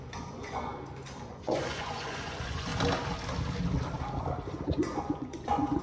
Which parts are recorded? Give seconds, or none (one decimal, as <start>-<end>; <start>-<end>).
0.7-1.3; 2.7-4.5